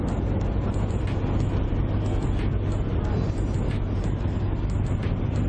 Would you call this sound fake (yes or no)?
no